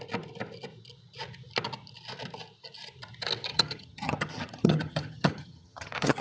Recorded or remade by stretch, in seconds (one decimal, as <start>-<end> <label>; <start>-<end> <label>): 0.0-3.5 recorded; 3.5-6.2 remade